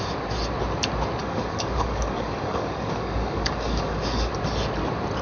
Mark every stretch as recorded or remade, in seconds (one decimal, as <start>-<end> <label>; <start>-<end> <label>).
0.0-1.2 recorded; 1.2-4.3 remade; 4.3-5.2 recorded